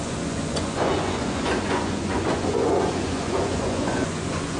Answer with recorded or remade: remade